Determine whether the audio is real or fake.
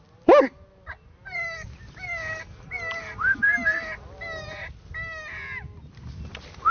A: real